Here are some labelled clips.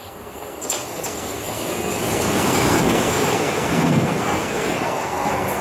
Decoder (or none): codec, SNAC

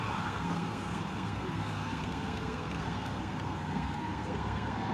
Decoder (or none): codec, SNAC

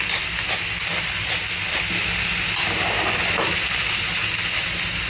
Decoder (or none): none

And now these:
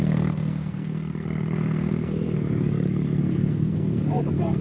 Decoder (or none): codec, SNAC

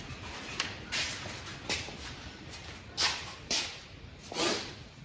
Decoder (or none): none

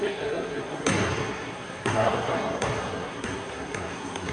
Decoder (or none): codec, SNAC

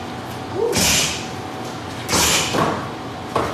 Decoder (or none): none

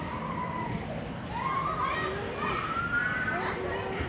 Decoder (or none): none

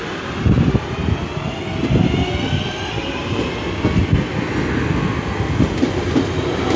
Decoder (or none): none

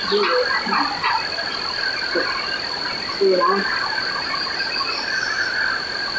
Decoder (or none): none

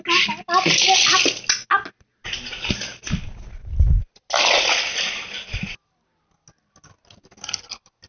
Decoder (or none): none